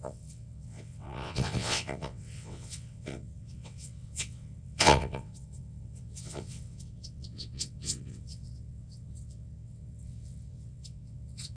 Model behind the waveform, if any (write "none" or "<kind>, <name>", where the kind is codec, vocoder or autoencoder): vocoder, WaveNeXt